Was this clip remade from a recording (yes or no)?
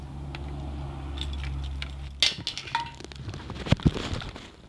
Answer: no